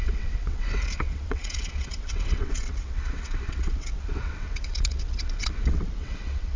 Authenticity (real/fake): fake